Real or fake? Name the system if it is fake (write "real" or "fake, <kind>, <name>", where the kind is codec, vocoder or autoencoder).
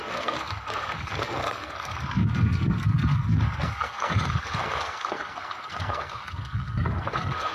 fake, codec, SNAC